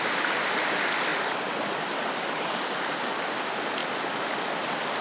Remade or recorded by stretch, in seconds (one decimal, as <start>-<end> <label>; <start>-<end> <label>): 0.0-5.0 recorded